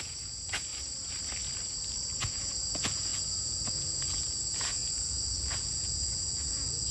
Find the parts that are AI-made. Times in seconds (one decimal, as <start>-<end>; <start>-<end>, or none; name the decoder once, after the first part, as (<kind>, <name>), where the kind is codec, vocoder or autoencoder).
0.0-0.7 (vocoder, Vocos); 2.2-6.9